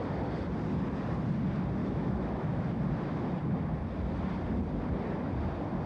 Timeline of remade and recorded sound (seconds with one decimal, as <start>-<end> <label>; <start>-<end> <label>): 0.0-1.8 recorded; 1.8-2.8 remade; 2.8-5.9 recorded

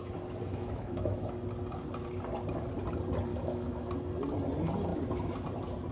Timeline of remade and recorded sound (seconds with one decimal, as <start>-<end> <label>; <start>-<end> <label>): 0.0-0.5 recorded; 0.5-1.3 remade; 1.3-3.3 recorded; 3.3-3.9 remade; 3.9-5.9 recorded

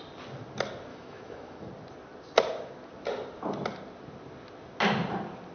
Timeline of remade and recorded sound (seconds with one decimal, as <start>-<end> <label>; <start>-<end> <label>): 0.0-0.9 recorded; 0.9-1.7 remade; 1.7-5.5 recorded

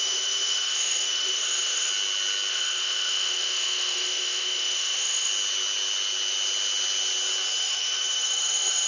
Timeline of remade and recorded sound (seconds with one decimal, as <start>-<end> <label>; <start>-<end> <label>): 0.0-1.9 remade; 1.9-2.5 recorded; 2.5-5.3 remade; 5.3-7.6 recorded; 7.6-8.9 remade